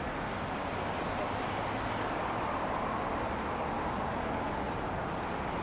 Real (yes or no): yes